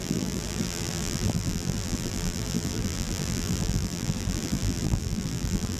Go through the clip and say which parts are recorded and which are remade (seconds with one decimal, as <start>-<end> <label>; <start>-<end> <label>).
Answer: 0.0-5.8 remade